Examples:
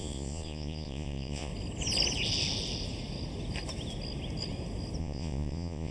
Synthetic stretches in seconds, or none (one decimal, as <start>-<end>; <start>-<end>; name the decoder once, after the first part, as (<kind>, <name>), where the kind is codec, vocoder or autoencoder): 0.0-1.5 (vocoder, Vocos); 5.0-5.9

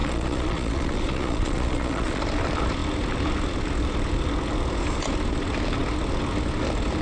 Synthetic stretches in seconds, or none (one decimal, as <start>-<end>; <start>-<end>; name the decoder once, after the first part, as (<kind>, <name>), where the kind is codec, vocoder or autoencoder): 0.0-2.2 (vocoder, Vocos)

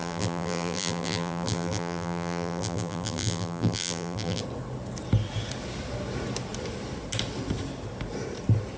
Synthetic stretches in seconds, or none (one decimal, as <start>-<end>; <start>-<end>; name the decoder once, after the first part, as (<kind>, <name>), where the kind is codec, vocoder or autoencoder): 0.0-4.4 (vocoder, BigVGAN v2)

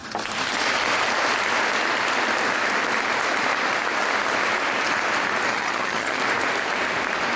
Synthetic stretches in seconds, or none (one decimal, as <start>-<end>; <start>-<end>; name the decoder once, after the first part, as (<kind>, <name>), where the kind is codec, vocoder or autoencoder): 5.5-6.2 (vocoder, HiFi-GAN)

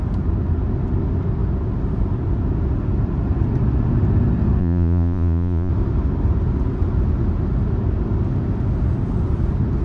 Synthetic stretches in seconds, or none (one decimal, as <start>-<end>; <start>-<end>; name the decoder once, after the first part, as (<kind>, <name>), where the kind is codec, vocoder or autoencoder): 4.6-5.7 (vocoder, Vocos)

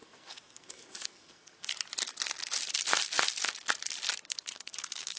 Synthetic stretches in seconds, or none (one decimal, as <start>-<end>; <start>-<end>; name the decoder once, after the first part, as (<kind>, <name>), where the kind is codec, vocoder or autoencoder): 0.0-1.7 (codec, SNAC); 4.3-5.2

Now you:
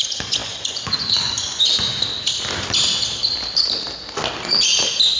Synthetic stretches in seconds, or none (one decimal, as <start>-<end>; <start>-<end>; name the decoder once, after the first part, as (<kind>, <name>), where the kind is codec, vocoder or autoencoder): 0.0-1.9 (vocoder, Vocos)

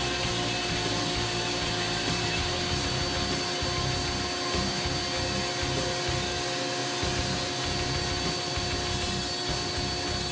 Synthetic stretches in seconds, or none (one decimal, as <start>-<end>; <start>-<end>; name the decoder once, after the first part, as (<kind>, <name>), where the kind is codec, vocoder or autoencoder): none